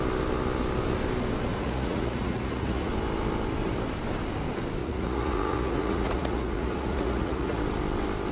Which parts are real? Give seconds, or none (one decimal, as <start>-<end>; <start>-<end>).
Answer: 0.0-1.5; 2.9-4.8; 7.6-8.3